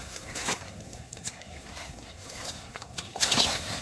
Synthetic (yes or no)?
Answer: yes